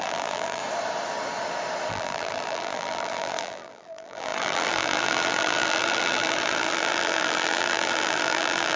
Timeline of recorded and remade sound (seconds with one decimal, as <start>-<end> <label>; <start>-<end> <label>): 0.0-0.6 remade; 0.6-1.9 recorded; 1.9-8.8 remade